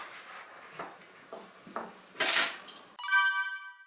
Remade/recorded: recorded